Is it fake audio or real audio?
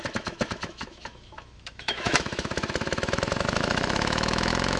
fake